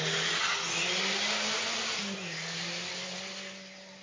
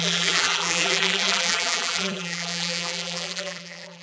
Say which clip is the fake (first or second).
second